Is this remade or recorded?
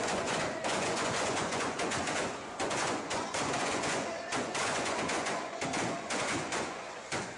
remade